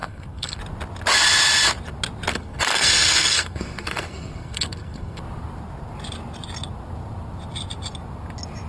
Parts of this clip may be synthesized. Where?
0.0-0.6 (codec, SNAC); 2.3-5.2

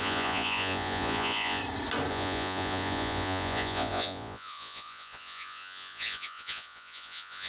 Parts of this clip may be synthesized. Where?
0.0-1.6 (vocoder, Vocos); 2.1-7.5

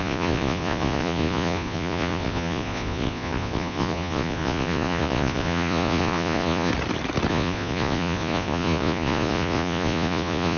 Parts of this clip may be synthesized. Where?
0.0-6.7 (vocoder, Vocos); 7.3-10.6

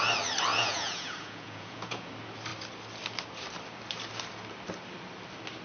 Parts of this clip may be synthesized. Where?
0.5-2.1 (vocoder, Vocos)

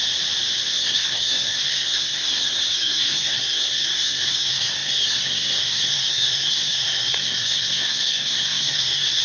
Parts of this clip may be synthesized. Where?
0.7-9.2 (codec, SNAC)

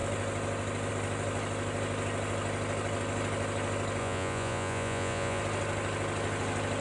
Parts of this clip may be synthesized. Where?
4.0-5.4 (vocoder, Vocos)